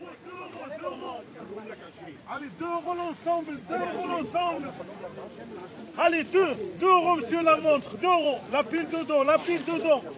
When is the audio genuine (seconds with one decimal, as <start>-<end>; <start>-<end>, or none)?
5.1-5.6

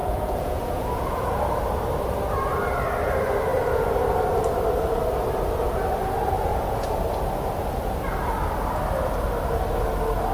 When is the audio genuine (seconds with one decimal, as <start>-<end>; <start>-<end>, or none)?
1.5-6.5; 7.0-10.3

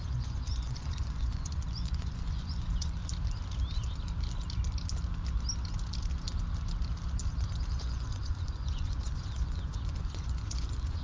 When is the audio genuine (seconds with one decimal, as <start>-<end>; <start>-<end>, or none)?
3.0-7.8

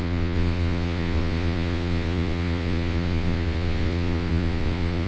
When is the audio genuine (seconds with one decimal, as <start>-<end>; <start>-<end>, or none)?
none

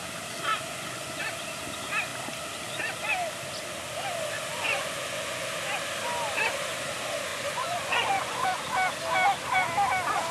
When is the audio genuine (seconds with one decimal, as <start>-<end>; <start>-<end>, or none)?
0.0-0.5; 1.2-4.5; 5.5-7.3; 8.6-10.3